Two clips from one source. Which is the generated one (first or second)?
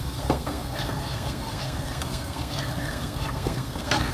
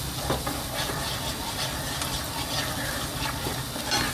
first